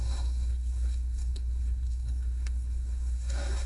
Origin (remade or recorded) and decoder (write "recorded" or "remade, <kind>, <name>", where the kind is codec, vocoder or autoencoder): remade, codec, SNAC